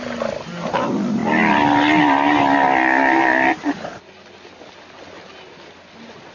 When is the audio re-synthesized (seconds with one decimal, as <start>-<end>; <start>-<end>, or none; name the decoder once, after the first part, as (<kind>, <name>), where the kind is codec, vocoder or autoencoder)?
none